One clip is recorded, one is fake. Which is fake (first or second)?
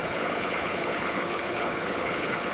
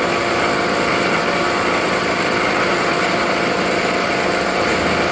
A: first